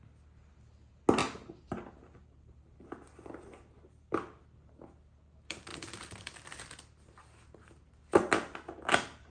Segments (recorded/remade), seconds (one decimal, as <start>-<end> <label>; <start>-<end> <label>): 0.0-9.3 recorded